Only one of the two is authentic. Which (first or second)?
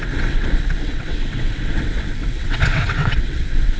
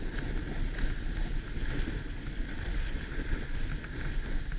second